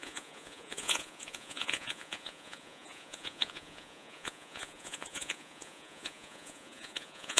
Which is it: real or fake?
fake